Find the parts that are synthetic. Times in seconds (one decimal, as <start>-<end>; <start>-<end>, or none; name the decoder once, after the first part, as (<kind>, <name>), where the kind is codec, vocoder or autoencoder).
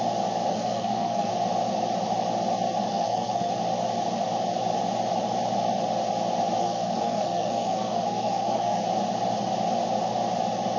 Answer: 0.5-1.3 (codec, SNAC); 2.9-3.5; 6.6-8.8